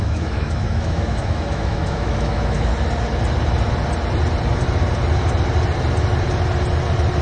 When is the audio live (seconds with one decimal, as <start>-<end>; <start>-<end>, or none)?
2.7-7.2